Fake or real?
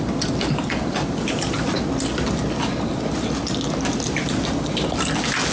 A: real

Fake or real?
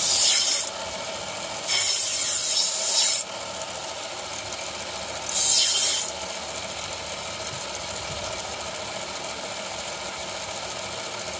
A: real